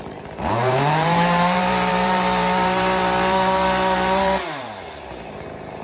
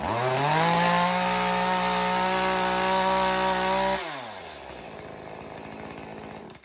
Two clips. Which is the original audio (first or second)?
second